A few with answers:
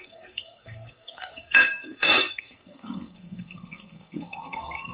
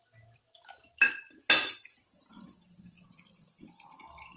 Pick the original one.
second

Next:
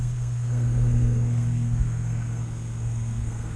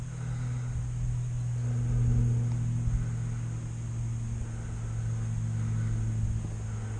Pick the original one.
second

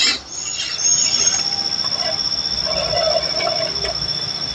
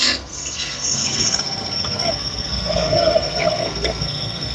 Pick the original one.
first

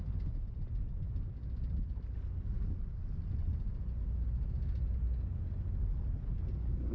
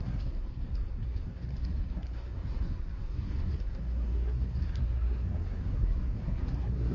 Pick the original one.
first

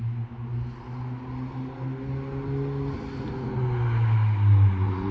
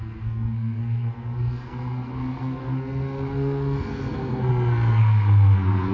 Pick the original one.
first